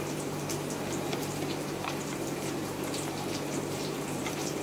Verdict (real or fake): fake